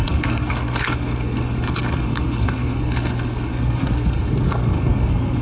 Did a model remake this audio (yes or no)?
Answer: yes